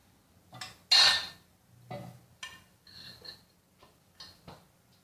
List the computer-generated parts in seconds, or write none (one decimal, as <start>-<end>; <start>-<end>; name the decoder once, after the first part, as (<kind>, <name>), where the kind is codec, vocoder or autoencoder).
none